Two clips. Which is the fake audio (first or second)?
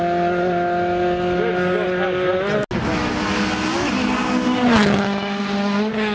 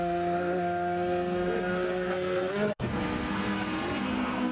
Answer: second